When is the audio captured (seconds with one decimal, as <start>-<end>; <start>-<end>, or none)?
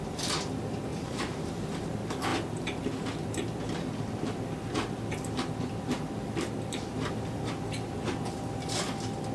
0.0-0.9; 1.6-9.3